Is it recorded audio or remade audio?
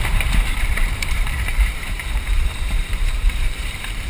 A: remade